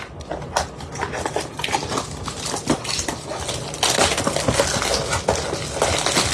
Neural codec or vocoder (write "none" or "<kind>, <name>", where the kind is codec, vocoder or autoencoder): none